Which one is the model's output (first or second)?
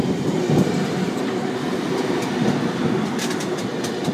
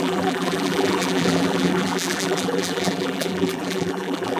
second